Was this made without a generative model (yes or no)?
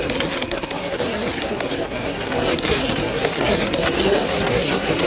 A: no